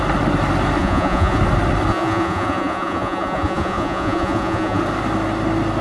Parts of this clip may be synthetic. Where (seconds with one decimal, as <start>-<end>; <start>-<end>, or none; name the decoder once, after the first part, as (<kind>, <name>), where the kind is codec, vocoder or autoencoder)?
0.8-1.4 (vocoder, Vocos); 1.9-4.8